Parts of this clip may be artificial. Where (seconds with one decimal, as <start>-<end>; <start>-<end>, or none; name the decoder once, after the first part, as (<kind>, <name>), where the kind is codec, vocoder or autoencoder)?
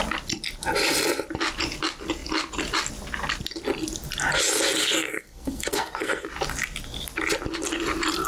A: 4.8-6.3 (codec, SNAC)